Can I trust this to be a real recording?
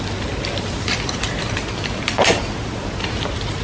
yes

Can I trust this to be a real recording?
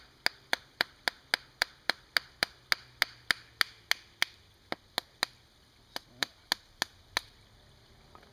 yes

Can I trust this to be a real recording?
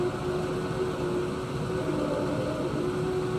yes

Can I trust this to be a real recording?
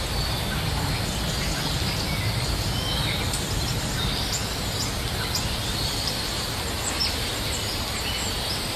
yes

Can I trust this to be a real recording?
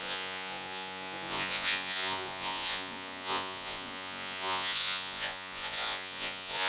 no